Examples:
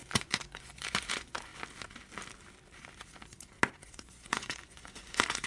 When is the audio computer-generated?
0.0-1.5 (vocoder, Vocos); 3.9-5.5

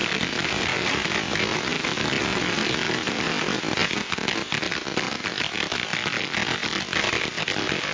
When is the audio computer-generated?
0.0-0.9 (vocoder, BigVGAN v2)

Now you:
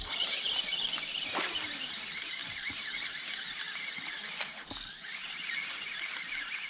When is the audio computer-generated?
none

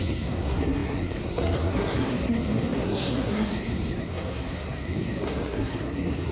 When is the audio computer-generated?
0.0-6.3 (codec, SNAC)

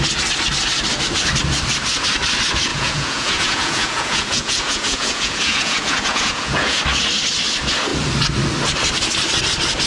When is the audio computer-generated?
2.7-6.8 (vocoder, Vocos)